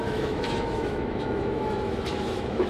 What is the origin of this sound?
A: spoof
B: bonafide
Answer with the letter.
A